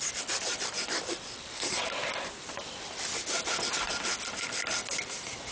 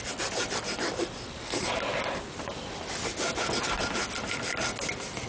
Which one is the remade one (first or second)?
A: first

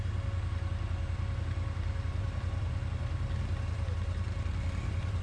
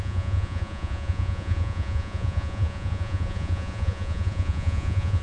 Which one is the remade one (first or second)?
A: second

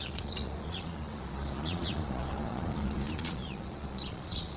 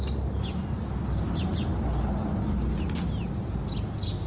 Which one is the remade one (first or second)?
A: first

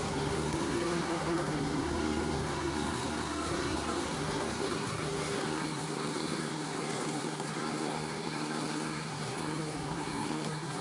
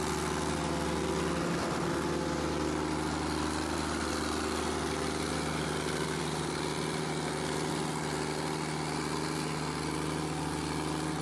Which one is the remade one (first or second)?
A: first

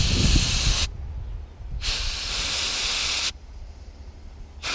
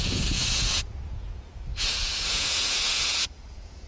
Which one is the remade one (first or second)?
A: second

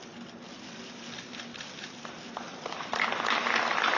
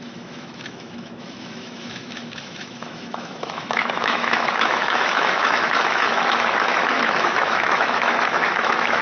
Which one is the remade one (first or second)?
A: second